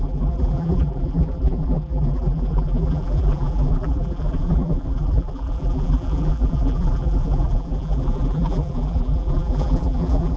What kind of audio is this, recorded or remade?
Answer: remade